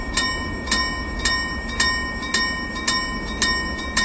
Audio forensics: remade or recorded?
recorded